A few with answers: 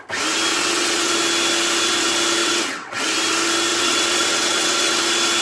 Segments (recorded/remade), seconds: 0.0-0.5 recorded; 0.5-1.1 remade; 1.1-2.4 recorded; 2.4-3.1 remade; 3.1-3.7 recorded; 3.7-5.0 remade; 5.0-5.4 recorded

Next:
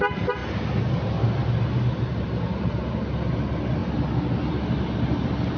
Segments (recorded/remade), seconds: 0.0-5.6 recorded

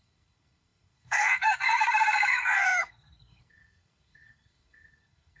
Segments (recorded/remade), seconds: 0.0-5.4 remade

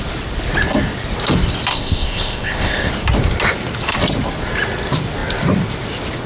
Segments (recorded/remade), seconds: 0.0-1.7 recorded; 1.7-2.9 remade; 2.9-6.3 recorded

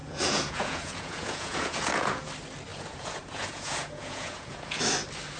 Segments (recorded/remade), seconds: 0.0-2.3 remade; 2.3-2.7 recorded; 2.7-4.8 remade; 4.8-5.4 recorded

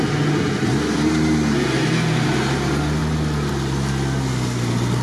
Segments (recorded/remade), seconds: 0.0-5.0 recorded

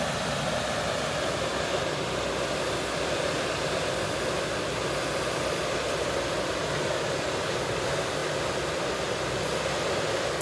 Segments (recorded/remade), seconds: 0.0-10.4 recorded

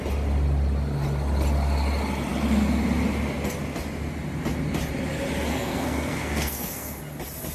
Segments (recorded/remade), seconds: 0.0-5.5 recorded; 5.5-7.0 remade; 7.0-7.5 recorded